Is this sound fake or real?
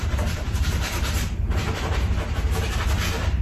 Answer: fake